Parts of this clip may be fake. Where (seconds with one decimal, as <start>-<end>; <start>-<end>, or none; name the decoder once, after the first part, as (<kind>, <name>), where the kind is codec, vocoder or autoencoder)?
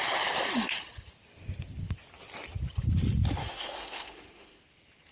3.4-4.6 (autoencoder, DAC-VAE)